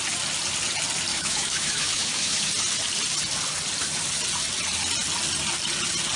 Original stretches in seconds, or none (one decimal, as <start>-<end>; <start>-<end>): 0.0-1.1; 2.5-6.2